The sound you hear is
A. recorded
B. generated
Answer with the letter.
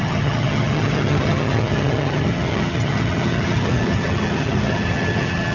B